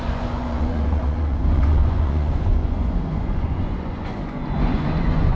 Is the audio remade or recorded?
remade